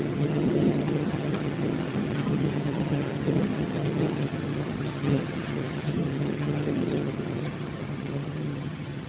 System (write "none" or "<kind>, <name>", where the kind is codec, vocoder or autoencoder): vocoder, HiFi-GAN